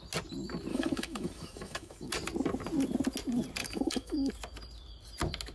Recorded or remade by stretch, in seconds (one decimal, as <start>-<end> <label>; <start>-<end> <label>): 0.0-0.7 recorded; 0.7-2.1 remade; 2.1-3.6 recorded; 3.6-4.3 remade; 4.3-5.5 recorded